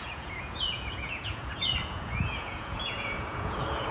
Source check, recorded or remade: remade